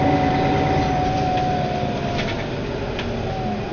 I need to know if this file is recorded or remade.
recorded